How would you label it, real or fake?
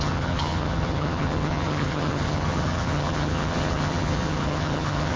fake